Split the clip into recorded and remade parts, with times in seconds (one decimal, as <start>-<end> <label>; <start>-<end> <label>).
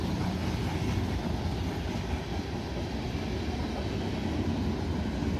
0.0-5.4 recorded